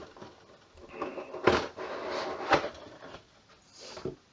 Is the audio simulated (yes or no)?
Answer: no